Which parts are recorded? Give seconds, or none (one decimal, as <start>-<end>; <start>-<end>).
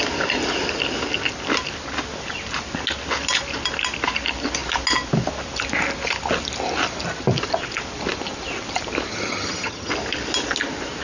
0.0-9.1; 9.9-11.0